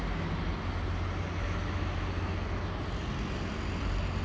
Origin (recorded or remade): recorded